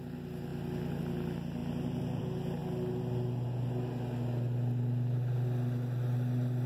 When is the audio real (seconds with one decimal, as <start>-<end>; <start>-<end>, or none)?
0.0-6.7